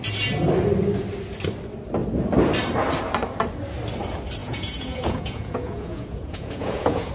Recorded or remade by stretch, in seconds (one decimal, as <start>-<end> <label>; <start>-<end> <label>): 0.0-4.4 recorded; 4.4-7.1 remade

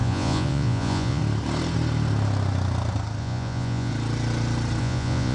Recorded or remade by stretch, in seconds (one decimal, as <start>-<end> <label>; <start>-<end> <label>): 0.0-1.2 remade; 1.2-3.2 recorded; 3.2-3.9 remade; 3.9-4.8 recorded; 4.8-5.3 remade

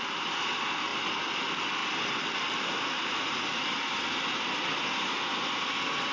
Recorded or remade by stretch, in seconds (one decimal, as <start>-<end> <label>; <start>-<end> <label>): 0.0-6.1 recorded

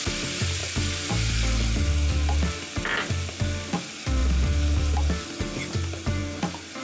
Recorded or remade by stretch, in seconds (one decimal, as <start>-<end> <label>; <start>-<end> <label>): 0.0-6.8 recorded

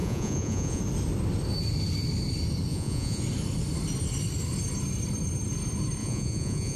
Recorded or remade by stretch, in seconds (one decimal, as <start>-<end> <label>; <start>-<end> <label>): 0.0-0.8 remade; 0.8-2.7 recorded; 2.7-3.2 remade; 3.2-6.0 recorded; 6.0-6.8 remade